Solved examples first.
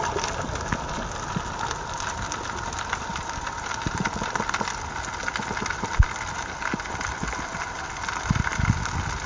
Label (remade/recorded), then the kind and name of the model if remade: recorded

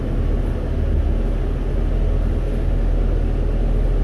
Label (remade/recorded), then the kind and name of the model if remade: recorded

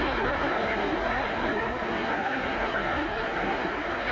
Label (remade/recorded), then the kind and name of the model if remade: remade, codec, SNAC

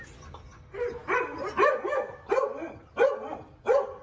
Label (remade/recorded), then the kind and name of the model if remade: recorded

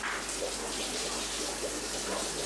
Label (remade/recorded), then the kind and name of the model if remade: recorded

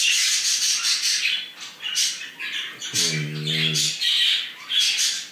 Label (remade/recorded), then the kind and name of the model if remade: recorded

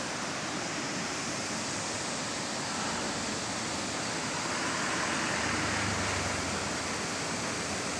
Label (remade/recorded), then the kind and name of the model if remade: recorded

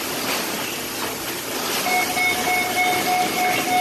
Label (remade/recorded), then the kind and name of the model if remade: recorded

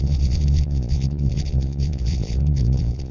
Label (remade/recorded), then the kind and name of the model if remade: remade, vocoder, Vocos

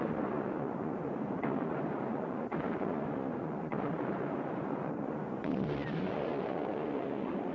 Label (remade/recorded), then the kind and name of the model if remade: remade, vocoder, Vocos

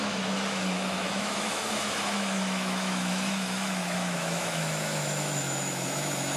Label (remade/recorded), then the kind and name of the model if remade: remade, autoencoder, DAC-VAE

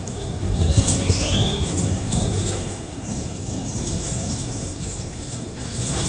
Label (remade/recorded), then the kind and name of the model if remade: remade, codec, SNAC